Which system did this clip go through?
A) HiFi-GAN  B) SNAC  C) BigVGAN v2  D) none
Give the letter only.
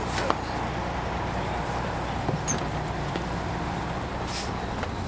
D